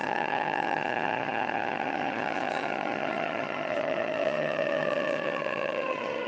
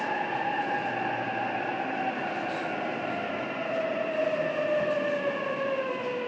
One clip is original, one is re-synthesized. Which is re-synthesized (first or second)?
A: first